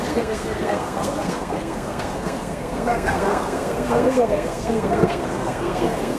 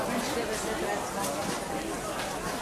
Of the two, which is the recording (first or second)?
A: second